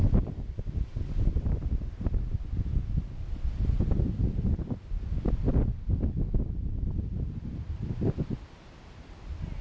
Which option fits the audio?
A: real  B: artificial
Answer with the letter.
A